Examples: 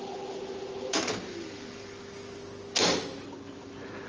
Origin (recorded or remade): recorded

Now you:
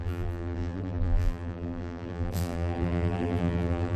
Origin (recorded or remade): remade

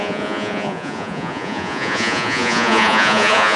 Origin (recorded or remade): remade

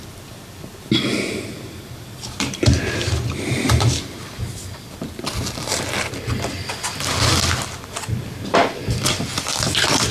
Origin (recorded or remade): remade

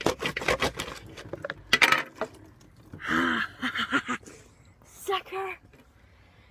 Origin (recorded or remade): recorded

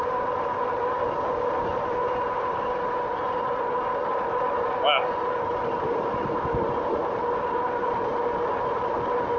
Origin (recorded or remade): recorded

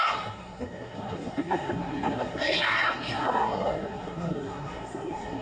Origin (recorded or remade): remade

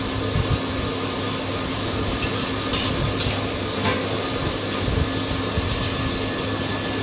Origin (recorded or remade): recorded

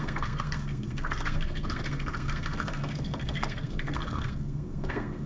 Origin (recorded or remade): remade